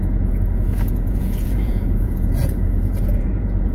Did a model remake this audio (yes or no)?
yes